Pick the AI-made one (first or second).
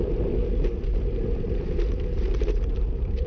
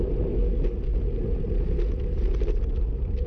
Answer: first